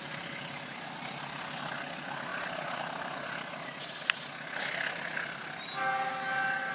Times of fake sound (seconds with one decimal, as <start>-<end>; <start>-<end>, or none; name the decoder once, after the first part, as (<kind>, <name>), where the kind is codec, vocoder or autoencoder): 2.3-2.8 (vocoder, Vocos)